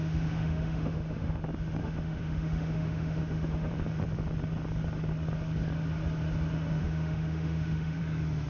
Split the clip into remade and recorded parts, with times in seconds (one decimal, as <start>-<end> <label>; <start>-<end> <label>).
0.0-1.4 remade; 1.4-1.8 recorded; 1.8-3.7 remade; 3.7-6.8 recorded; 6.8-8.0 remade; 8.0-8.5 recorded